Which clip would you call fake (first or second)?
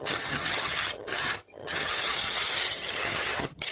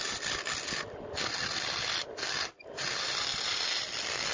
first